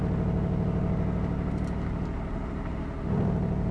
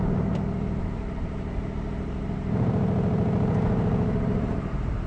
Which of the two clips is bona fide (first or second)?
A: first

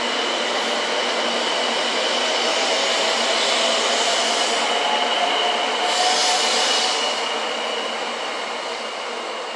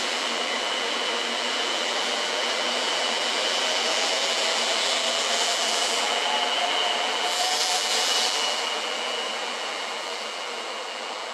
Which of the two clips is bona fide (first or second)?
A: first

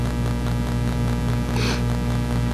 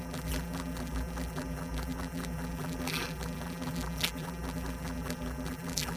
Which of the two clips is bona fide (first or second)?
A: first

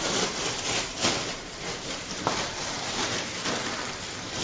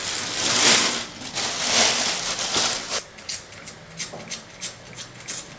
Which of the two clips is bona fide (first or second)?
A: second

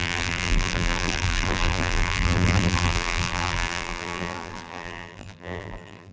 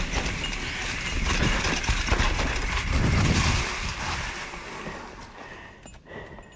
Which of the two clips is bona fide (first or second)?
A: second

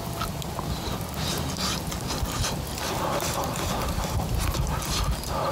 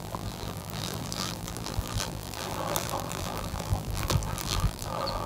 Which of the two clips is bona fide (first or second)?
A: first